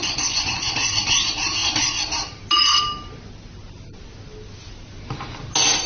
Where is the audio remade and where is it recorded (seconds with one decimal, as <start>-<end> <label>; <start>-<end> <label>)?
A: 0.0-0.6 remade; 0.6-5.9 recorded